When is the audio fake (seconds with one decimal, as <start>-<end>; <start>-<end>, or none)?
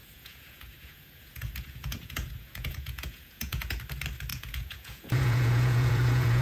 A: 0.0-3.8; 4.3-6.4